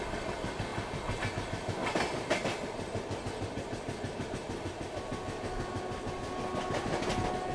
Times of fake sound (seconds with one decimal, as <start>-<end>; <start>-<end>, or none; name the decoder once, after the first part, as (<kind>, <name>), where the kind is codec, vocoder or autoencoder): none